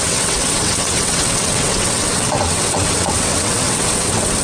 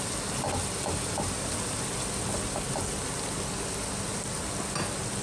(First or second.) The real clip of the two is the second